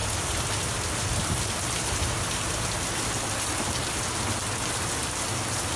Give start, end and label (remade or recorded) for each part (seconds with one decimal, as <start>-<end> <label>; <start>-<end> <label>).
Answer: 0.0-5.8 recorded